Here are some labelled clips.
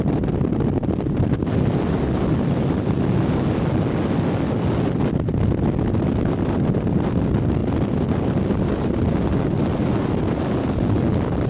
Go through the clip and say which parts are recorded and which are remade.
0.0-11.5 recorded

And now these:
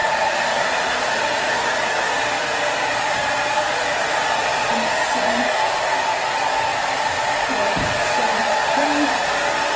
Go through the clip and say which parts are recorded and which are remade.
0.0-1.7 remade; 1.7-3.2 recorded; 3.2-4.7 remade; 4.7-6.7 recorded; 6.7-9.3 remade; 9.3-9.8 recorded